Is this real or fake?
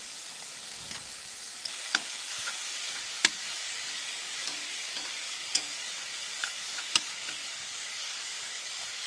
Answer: fake